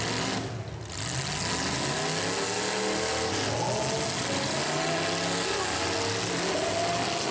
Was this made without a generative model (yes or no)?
yes